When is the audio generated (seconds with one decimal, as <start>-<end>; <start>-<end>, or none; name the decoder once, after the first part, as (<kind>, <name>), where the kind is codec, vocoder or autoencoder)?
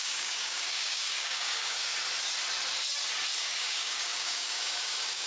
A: 0.0-1.9 (codec, DAC); 3.4-5.3